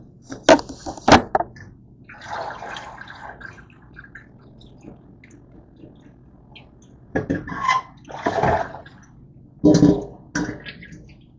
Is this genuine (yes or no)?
yes